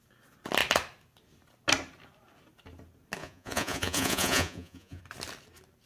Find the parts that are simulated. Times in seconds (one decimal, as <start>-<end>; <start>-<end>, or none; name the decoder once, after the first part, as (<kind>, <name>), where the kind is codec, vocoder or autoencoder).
3.2-5.0 (vocoder, Vocos)